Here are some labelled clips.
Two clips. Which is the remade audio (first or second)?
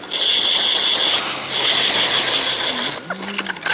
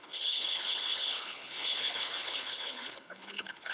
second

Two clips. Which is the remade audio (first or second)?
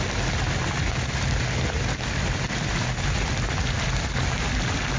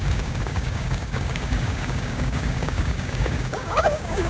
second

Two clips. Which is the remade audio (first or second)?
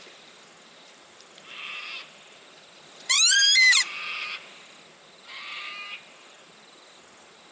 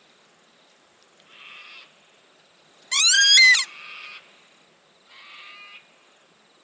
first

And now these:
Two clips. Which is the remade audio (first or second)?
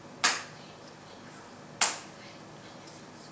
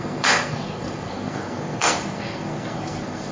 second